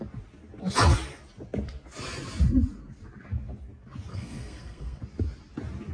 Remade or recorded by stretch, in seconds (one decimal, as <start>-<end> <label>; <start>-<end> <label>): 0.0-4.1 recorded; 4.1-5.0 remade; 5.0-5.9 recorded